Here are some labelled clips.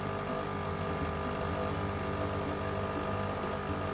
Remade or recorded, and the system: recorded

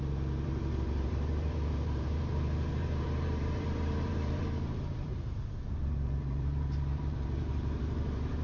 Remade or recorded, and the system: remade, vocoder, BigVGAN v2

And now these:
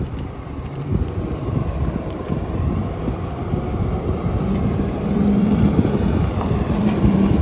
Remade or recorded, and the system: remade, vocoder, BigVGAN v2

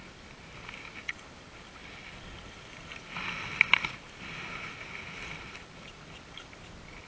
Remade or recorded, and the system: recorded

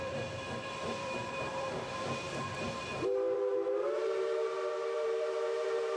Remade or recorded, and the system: remade, vocoder, BigVGAN v2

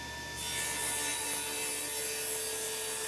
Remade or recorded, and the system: recorded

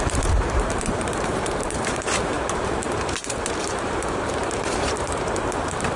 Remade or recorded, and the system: remade, vocoder, BigVGAN v2